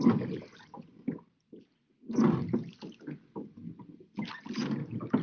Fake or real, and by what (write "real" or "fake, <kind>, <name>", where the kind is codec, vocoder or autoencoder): real